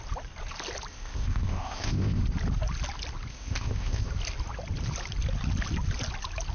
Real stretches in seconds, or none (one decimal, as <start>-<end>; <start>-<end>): 0.0-0.9; 2.2-3.3; 4.1-6.5